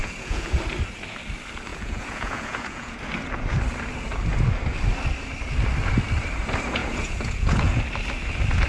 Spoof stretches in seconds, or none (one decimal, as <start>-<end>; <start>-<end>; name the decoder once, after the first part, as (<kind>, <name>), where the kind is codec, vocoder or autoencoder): 0.0-0.6 (vocoder, Vocos); 1.7-3.0; 6.8-7.8